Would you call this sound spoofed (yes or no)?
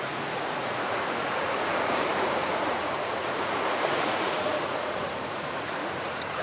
yes